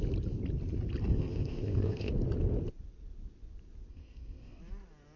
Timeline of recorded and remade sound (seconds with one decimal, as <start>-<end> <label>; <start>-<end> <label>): 0.0-1.1 recorded; 1.1-2.1 remade; 2.1-3.9 recorded; 3.9-4.6 remade; 4.6-5.2 recorded